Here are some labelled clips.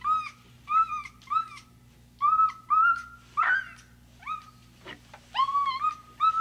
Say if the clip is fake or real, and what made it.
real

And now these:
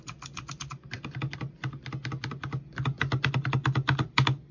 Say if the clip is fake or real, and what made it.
real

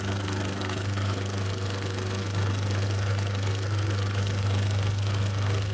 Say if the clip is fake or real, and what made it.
fake, codec, SNAC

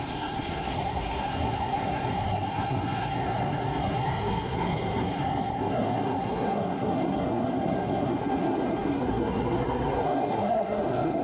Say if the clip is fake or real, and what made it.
fake, codec, SNAC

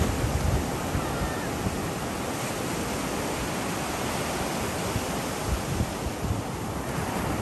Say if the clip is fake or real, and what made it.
real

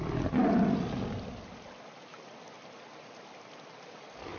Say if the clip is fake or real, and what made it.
real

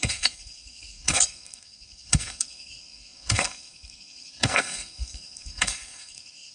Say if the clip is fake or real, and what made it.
fake, codec, SNAC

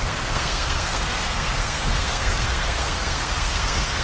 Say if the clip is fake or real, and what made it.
fake, codec, SNAC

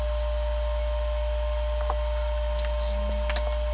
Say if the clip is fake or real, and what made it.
real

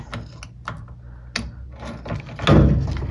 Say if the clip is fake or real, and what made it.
real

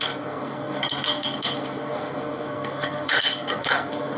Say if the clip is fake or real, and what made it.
fake, codec, SNAC